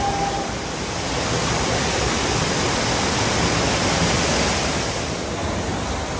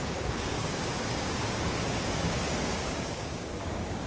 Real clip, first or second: first